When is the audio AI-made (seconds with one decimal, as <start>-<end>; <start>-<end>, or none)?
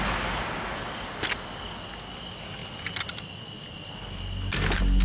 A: none